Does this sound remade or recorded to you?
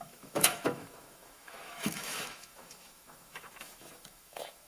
remade